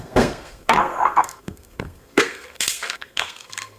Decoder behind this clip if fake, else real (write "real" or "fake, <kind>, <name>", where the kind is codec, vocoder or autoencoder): fake, codec, SNAC